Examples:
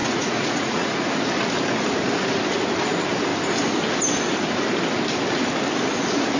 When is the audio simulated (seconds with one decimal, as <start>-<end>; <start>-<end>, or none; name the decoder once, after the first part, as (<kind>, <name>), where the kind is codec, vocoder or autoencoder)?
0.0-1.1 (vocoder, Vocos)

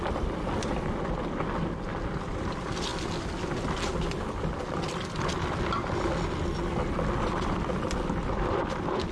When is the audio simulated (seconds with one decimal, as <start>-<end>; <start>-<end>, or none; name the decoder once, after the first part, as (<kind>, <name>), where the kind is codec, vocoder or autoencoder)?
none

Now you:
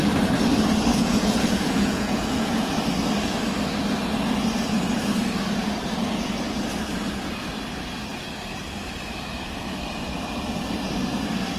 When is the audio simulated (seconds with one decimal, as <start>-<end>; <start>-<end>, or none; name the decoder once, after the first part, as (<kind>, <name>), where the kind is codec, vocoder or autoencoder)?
0.9-2.7 (vocoder, Vocos)

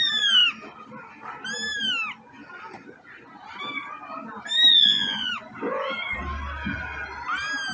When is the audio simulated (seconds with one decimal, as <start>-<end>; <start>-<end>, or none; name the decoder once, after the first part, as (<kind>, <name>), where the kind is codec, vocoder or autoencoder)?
4.7-5.3 (vocoder, Vocos)